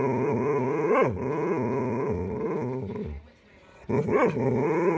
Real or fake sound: real